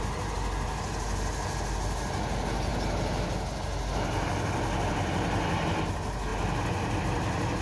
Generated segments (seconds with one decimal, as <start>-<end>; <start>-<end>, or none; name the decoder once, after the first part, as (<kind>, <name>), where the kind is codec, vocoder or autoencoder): none